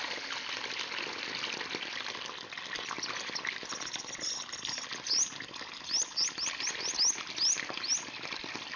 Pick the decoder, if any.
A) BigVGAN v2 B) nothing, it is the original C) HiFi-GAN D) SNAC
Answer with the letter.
B